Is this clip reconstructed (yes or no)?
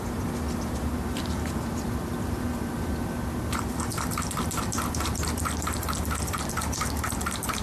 yes